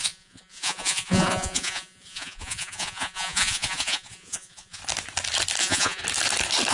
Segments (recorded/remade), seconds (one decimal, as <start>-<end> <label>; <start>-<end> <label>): 0.0-4.8 remade; 4.8-5.6 recorded; 5.6-6.0 remade; 6.0-6.7 recorded